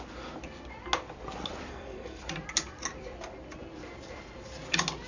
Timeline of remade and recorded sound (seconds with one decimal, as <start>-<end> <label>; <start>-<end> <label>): 0.0-1.7 recorded; 1.7-2.2 remade; 2.2-5.1 recorded

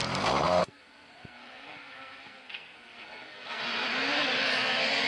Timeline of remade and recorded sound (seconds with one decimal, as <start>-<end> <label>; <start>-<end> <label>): 0.0-0.6 recorded; 0.6-3.6 remade; 3.6-5.1 recorded

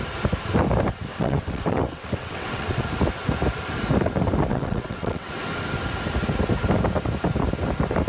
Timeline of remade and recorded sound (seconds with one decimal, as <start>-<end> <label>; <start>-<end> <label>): 0.0-1.1 recorded; 1.1-2.8 remade; 2.8-4.5 recorded; 4.5-5.3 remade; 5.3-8.1 recorded